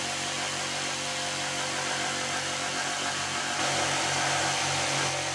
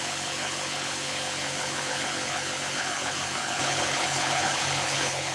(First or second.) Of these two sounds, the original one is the first